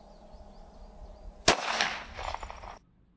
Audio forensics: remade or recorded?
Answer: recorded